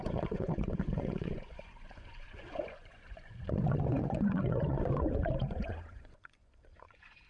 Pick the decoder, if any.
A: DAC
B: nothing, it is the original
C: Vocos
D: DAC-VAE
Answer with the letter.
C